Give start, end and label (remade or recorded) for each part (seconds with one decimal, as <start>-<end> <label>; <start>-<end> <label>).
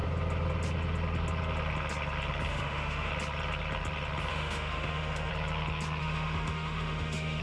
0.0-2.5 recorded; 2.5-3.1 remade; 3.1-4.3 recorded; 4.3-5.3 remade; 5.3-6.0 recorded; 6.0-7.4 remade